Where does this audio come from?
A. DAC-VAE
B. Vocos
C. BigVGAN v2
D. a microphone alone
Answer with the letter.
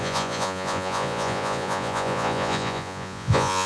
B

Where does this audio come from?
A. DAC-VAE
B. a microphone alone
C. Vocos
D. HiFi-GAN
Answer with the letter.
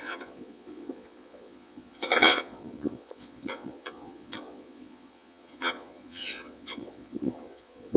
C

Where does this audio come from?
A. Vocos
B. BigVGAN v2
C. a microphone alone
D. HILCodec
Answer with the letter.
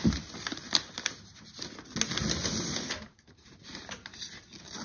C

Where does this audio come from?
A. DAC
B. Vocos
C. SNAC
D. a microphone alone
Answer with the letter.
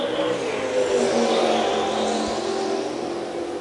D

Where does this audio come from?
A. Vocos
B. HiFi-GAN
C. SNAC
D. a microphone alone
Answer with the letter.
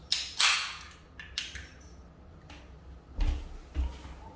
D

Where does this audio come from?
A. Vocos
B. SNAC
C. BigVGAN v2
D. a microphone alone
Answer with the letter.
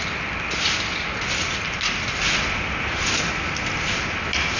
D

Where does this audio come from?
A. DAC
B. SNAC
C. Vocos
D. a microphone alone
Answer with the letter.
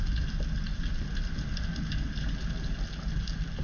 D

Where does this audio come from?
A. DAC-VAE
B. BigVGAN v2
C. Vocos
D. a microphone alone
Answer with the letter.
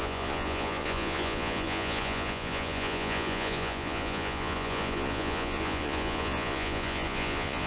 C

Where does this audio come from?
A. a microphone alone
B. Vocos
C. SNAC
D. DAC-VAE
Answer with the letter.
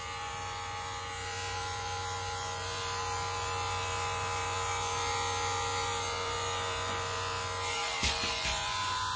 B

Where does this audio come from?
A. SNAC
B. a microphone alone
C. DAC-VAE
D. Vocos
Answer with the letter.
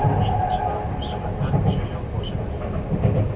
B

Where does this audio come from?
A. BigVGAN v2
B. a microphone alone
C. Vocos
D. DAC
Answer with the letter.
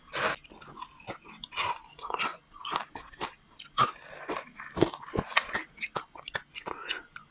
B